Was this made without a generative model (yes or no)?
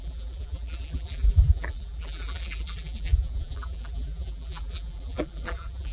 no